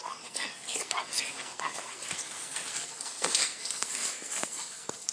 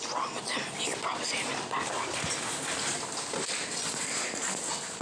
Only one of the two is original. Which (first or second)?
second